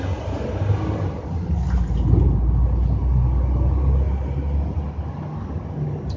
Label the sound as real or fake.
real